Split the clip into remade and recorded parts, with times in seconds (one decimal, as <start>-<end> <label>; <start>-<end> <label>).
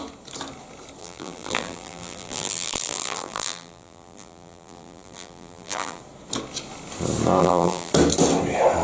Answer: 0.0-1.0 recorded; 1.0-6.0 remade; 6.0-7.4 recorded; 7.4-7.9 remade; 7.9-8.8 recorded